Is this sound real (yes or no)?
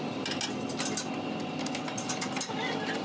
yes